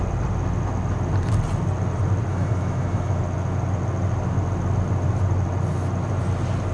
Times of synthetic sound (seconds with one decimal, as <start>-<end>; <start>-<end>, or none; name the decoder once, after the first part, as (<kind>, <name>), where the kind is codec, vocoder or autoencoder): 2.3-3.2 (autoencoder, DAC-VAE)